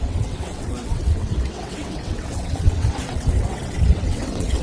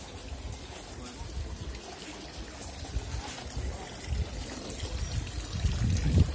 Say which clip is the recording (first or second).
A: second